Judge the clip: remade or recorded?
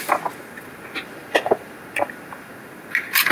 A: recorded